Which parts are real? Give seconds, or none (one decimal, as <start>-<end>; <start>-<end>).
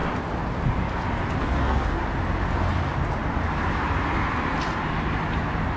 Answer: 0.0-1.4; 2.0-5.8